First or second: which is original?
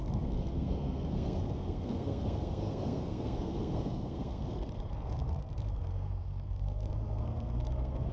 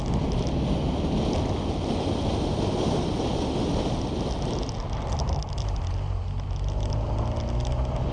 second